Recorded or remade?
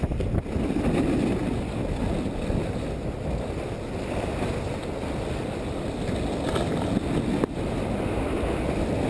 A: recorded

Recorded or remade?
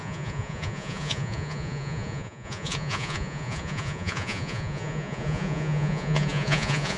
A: remade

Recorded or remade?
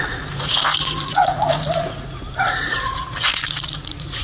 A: remade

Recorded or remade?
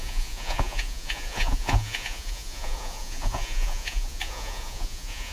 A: remade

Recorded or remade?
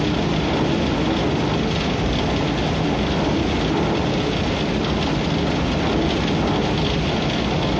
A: recorded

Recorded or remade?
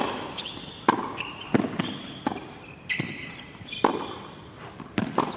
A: recorded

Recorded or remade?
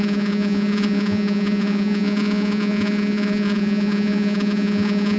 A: remade